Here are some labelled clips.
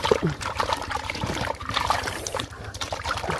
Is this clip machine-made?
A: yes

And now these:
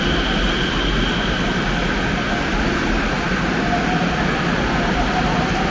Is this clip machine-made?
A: no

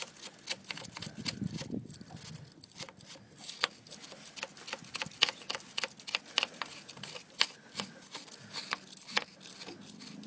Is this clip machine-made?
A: no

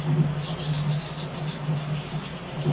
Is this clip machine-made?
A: no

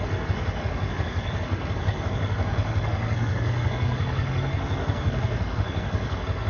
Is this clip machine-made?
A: yes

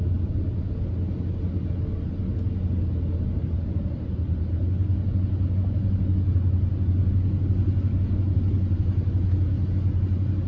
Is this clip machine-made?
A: no